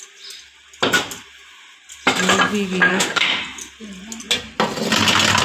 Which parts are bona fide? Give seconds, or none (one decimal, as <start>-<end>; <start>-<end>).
0.0-2.9; 3.4-5.4